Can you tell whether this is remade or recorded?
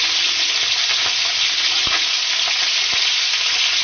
recorded